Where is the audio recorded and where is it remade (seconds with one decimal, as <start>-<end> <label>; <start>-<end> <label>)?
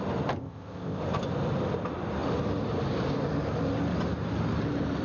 0.0-0.4 recorded; 0.4-1.0 remade; 1.0-5.0 recorded